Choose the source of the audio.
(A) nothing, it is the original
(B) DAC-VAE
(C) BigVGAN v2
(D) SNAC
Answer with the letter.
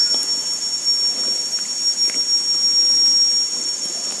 A